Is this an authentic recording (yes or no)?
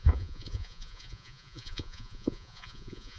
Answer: no